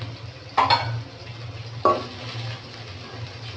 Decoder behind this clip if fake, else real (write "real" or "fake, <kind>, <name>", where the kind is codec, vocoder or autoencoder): real